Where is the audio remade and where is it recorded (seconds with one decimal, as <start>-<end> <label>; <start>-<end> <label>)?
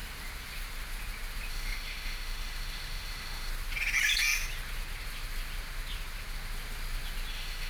0.0-1.5 recorded; 1.5-3.5 remade; 3.5-7.3 recorded; 7.3-7.7 remade